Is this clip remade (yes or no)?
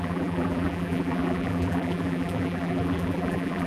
yes